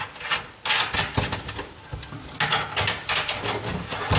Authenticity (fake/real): real